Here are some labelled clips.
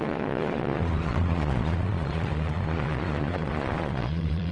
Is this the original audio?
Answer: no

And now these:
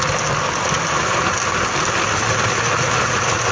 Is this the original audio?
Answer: yes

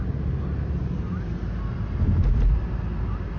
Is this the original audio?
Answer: yes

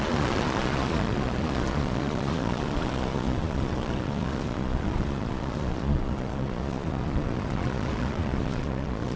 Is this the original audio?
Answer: no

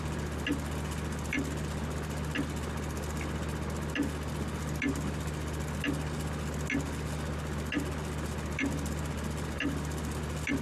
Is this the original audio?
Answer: yes